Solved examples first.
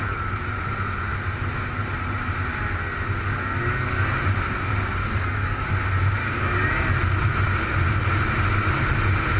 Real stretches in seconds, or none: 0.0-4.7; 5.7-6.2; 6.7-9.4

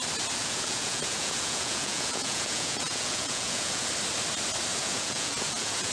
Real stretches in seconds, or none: 0.0-0.4; 3.9-4.7

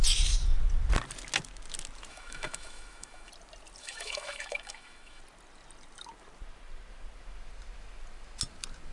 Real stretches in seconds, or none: 0.0-2.1; 3.3-3.8; 5.2-8.9

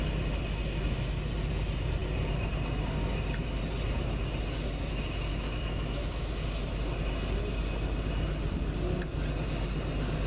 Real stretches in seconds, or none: 0.0-5.3; 6.3-10.3

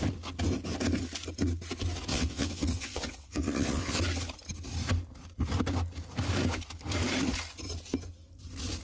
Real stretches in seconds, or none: 0.0-2.1; 4.0-8.8